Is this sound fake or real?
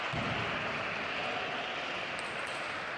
real